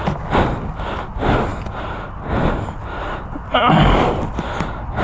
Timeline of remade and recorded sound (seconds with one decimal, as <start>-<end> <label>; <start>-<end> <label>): 0.0-5.0 recorded